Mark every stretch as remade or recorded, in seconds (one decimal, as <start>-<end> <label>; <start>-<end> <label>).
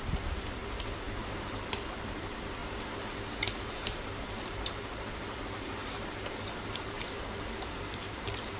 0.0-0.6 remade; 0.6-1.3 recorded; 1.3-2.6 remade; 2.6-3.6 recorded; 3.6-8.6 remade